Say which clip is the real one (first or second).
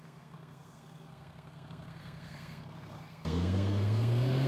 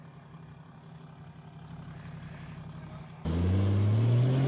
second